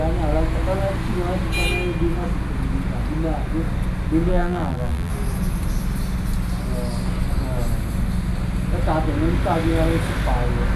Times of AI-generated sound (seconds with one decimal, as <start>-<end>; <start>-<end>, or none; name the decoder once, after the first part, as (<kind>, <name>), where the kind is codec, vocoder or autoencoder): 4.3-5.1 (vocoder, BigVGAN v2)